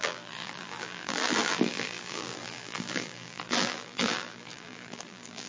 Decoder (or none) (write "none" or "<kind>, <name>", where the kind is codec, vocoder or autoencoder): vocoder, BigVGAN v2